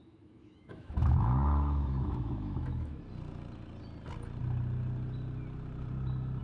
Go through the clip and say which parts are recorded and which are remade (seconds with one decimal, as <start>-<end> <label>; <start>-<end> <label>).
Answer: 0.0-3.0 remade; 3.0-6.4 recorded